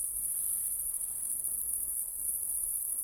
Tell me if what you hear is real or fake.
fake